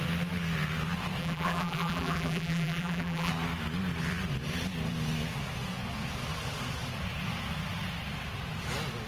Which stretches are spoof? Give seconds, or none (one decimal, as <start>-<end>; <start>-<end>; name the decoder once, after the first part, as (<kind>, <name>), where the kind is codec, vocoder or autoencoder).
1.2-3.3 (vocoder, BigVGAN v2)